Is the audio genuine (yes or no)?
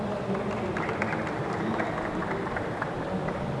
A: yes